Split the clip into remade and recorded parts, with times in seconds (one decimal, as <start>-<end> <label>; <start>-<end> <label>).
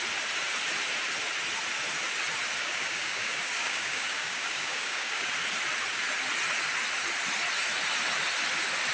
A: 0.0-2.6 recorded; 2.6-5.3 remade; 5.3-8.9 recorded